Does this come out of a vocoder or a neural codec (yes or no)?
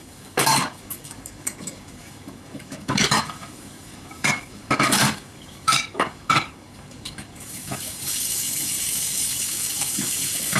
yes